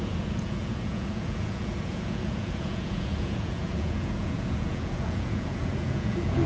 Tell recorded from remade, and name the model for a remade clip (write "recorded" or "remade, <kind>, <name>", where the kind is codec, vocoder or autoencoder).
remade, vocoder, Vocos